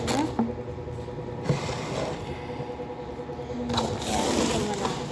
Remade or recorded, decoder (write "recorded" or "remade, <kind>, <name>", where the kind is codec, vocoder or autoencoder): recorded